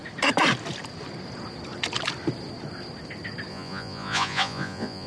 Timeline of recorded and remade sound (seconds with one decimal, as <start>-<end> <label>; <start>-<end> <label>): 0.0-3.5 recorded; 3.5-5.1 remade

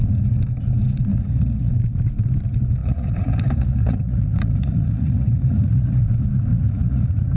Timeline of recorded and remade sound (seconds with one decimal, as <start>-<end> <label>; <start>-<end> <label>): 0.0-1.1 recorded; 1.1-1.7 remade; 1.7-2.8 recorded; 2.8-6.0 remade; 6.0-6.5 recorded; 6.5-7.4 remade

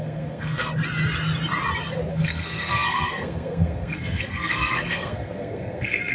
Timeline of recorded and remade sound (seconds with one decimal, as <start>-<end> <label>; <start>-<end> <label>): 0.0-0.7 remade; 0.7-2.1 recorded; 2.1-6.1 remade